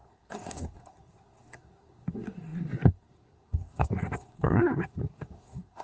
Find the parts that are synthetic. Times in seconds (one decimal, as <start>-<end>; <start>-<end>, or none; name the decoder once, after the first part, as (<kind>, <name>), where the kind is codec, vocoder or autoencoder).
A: 0.0-5.8 (codec, SNAC)